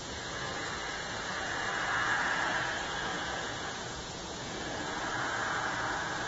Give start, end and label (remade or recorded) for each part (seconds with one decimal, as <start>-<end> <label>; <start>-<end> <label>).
0.0-6.3 remade